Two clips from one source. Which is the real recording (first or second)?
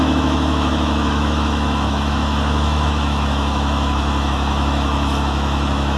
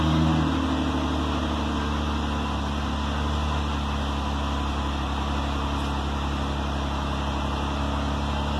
second